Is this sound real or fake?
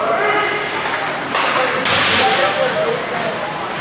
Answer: real